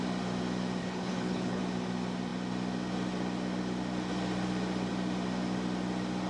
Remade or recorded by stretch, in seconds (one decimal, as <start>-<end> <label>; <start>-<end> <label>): 0.0-0.8 recorded; 0.8-1.6 remade; 1.6-6.3 recorded